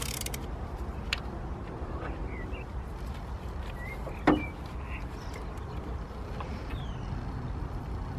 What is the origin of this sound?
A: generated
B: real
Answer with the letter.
B